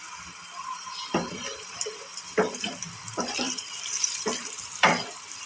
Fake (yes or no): yes